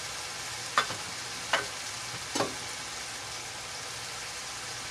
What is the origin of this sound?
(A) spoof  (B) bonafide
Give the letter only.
B